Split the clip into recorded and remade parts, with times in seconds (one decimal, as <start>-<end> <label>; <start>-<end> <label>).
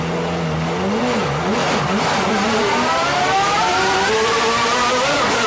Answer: 0.0-1.6 recorded; 1.6-4.9 remade; 4.9-5.5 recorded